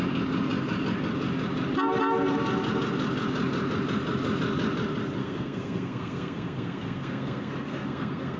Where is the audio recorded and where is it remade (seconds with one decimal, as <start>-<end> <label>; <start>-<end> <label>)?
0.0-5.2 recorded; 5.2-8.4 remade